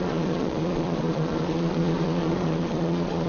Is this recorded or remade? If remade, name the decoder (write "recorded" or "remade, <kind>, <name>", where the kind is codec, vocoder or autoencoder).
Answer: remade, vocoder, Vocos